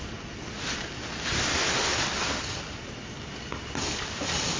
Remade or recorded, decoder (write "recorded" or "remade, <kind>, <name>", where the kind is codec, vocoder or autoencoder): recorded